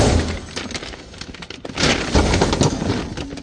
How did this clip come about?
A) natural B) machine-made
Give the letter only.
A